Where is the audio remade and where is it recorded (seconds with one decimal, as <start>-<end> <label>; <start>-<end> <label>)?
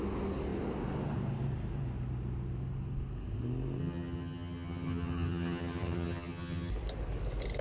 0.0-3.8 recorded; 3.8-6.7 remade; 6.7-7.6 recorded